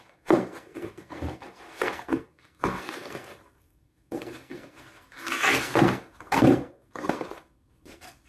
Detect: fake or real fake